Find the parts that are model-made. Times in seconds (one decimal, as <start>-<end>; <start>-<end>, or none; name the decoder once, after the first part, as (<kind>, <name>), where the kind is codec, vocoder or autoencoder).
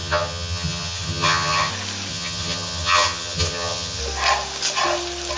0.0-1.7 (vocoder, HiFi-GAN); 2.1-4.0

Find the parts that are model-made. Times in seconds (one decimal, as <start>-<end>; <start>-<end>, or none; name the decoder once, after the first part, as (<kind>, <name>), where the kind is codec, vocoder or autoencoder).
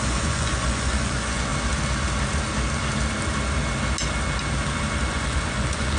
0.0-1.5 (vocoder, Vocos); 5.1-6.0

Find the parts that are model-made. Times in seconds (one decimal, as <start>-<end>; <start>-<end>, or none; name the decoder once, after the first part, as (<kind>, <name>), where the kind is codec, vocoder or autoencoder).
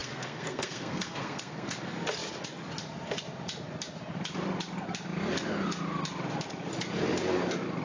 0.0-1.7 (codec, SNAC)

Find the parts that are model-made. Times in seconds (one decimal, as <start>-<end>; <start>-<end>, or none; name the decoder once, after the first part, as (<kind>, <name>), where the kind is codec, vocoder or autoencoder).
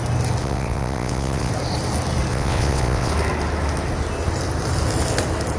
0.4-1.5 (vocoder, WaveNeXt); 2.3-3.1